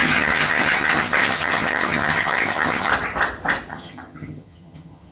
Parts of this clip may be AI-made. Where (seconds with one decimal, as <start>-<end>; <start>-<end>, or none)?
0.0-2.9; 3.7-5.1

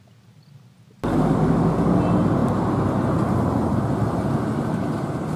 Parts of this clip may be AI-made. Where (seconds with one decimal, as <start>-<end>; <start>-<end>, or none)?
1.1-2.0

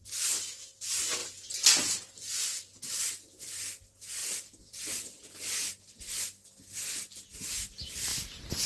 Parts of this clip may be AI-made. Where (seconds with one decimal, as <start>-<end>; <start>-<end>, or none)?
1.2-3.1; 4.2-4.9

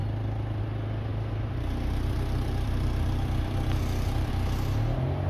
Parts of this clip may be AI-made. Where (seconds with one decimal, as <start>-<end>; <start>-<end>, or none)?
1.1-4.3